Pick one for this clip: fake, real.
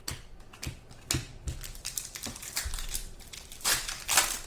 real